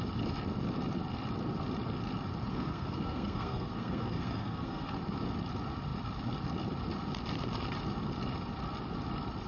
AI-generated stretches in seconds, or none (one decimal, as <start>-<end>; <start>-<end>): 2.5-5.0